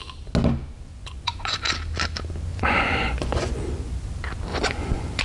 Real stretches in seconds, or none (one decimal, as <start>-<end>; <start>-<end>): 0.0-0.9; 1.7-2.5; 3.9-4.5